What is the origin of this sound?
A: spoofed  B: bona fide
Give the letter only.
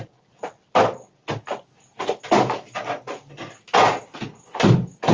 B